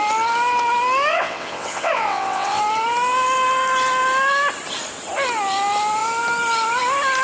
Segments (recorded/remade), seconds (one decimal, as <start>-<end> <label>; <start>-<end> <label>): 0.0-1.1 recorded; 1.1-2.6 remade; 2.6-7.2 recorded